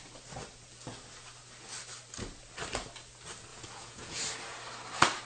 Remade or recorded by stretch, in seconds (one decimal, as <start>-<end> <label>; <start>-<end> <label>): 0.0-3.5 recorded; 3.5-4.2 remade; 4.2-5.2 recorded